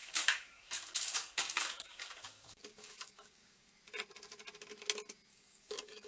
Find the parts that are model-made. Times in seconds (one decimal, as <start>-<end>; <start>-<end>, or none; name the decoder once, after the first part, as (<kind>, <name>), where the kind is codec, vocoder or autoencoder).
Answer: 0.0-3.7 (codec, DAC); 5.3-6.1